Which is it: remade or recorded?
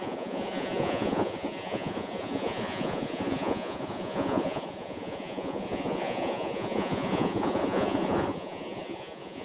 remade